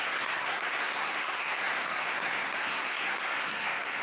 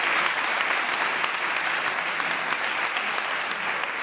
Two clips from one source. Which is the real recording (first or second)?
second